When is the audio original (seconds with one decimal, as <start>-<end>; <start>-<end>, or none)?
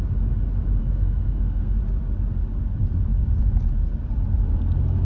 0.0-0.8; 1.8-5.0